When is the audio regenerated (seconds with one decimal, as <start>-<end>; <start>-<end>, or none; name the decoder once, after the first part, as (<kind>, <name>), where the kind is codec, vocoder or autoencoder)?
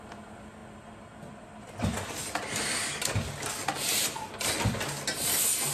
none